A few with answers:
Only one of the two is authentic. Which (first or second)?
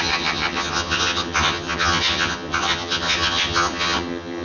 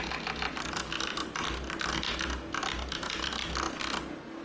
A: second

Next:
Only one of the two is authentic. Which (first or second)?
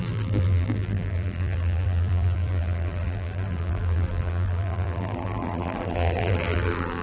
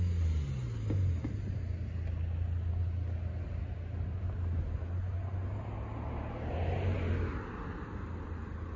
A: second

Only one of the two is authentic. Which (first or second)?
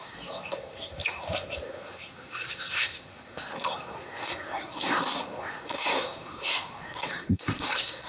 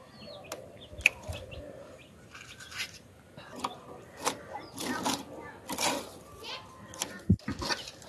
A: second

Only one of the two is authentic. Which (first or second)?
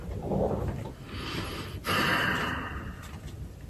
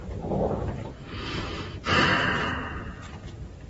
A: second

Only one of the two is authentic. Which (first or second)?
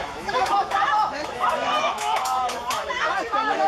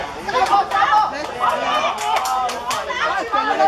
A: second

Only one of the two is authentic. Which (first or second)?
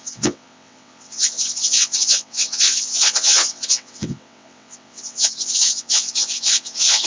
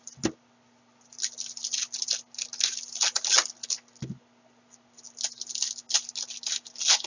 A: second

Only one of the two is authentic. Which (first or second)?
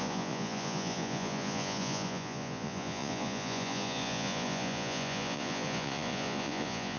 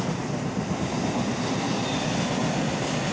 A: second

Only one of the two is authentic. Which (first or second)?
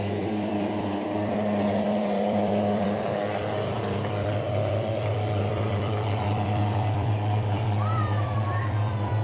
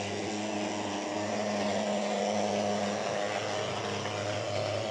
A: second